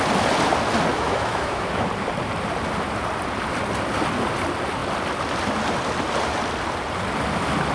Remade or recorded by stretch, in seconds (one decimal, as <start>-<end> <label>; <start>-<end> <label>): 0.0-0.9 recorded; 0.9-1.9 remade; 1.9-7.7 recorded